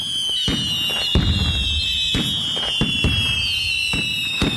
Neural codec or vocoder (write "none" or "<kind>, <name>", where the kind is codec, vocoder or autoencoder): vocoder, BigVGAN v2